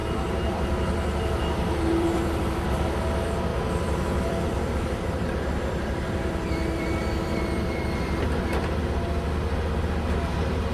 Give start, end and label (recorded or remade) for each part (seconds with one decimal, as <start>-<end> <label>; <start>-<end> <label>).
0.0-2.7 remade; 2.7-3.5 recorded; 3.5-8.2 remade; 8.2-10.7 recorded